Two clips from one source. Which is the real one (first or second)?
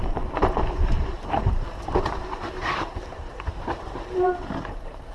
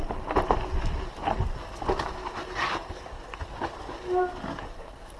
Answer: second